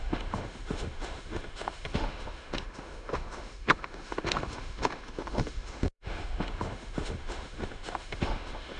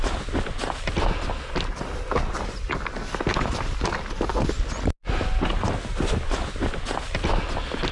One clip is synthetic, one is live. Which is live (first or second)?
second